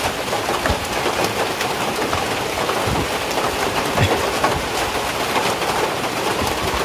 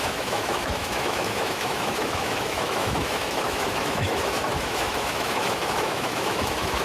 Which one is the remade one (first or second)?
second